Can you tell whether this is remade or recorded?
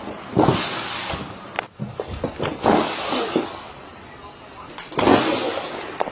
recorded